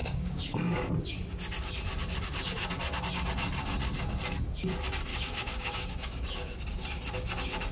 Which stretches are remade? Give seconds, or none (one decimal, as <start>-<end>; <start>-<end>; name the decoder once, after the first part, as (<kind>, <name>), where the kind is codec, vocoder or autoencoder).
0.0-0.9 (codec, DAC); 5.1-6.6